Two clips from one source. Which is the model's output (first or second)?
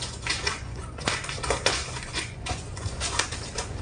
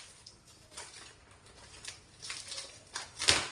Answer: first